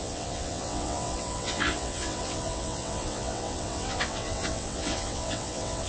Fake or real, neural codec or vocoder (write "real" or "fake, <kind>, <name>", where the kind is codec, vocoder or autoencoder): fake, vocoder, WaveNeXt